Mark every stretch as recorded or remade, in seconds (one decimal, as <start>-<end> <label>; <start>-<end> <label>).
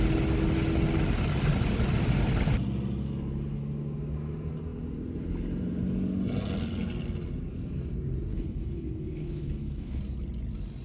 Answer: 0.0-8.3 recorded; 8.3-10.0 remade; 10.0-10.8 recorded